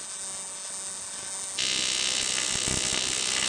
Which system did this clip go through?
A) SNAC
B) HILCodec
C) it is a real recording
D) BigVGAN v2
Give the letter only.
C